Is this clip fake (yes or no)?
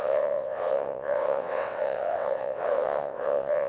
yes